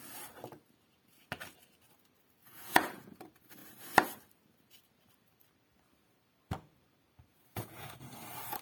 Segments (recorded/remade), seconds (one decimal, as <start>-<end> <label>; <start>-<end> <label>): 0.0-2.4 recorded; 2.4-3.2 remade; 3.2-7.3 recorded; 7.3-8.2 remade; 8.2-8.6 recorded